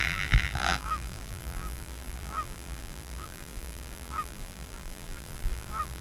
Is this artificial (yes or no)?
yes